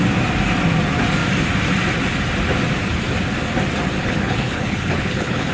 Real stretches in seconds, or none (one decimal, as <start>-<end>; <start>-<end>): 0.0-4.0